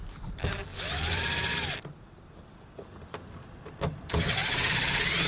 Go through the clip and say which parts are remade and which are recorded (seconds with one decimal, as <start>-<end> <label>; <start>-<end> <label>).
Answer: 0.0-5.3 recorded

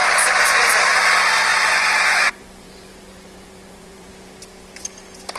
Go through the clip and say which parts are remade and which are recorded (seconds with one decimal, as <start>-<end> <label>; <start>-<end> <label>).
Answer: 0.0-0.7 remade; 0.7-1.5 recorded; 1.5-4.1 remade; 4.1-5.4 recorded

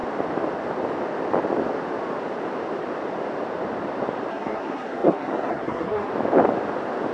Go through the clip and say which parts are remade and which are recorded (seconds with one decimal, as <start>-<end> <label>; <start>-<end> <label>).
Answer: 0.0-4.3 recorded; 4.3-6.1 remade; 6.1-7.1 recorded

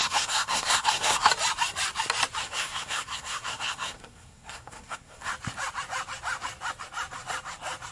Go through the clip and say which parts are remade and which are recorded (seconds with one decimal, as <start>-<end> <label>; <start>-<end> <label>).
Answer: 0.0-1.3 remade; 1.3-2.4 recorded; 2.4-5.3 remade; 5.3-7.9 recorded

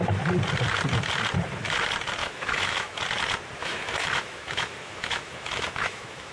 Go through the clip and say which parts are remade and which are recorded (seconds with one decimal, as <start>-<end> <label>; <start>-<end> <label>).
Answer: 0.0-2.2 recorded; 2.2-3.0 remade; 3.0-3.6 recorded; 3.6-6.3 remade

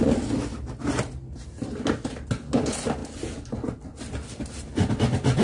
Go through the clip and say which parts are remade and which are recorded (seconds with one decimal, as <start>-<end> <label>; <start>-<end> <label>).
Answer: 0.0-5.4 recorded

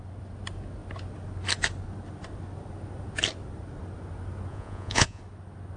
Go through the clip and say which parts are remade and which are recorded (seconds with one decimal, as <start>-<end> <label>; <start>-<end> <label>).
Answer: 0.0-4.5 recorded; 4.5-5.2 remade; 5.2-5.8 recorded

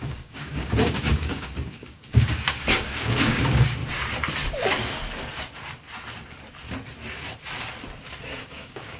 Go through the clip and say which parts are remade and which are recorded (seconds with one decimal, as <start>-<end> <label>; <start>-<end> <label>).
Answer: 0.0-3.8 remade; 3.8-8.4 recorded; 8.4-9.0 remade